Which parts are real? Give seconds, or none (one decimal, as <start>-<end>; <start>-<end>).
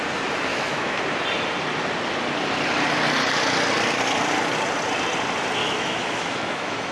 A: 0.0-0.5; 1.0-5.6